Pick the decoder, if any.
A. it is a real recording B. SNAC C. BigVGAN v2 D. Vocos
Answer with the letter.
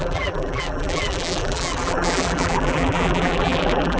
C